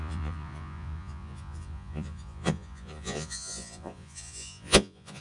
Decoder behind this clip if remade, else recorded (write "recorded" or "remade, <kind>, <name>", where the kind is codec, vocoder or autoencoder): remade, vocoder, Vocos